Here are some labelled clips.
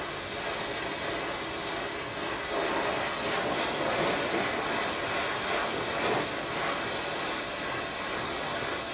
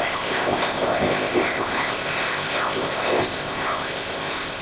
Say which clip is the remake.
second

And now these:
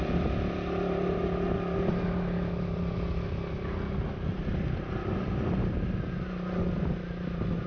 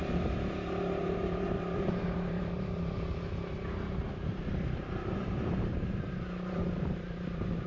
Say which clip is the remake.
second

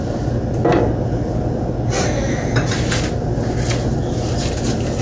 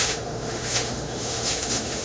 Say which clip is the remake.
second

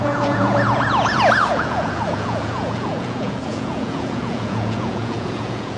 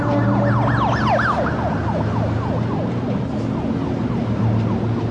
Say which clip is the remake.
first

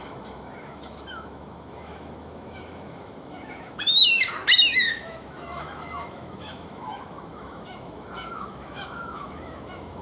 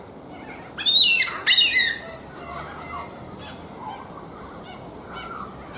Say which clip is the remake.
first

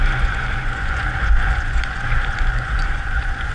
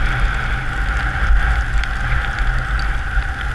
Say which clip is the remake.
first